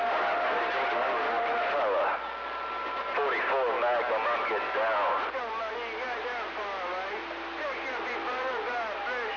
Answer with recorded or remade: recorded